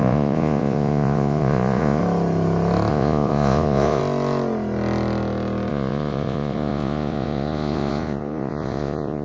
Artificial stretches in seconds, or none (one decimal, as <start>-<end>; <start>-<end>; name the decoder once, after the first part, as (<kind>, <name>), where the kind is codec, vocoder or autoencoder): 0.0-2.0 (vocoder, Vocos); 2.9-4.0; 5.7-9.2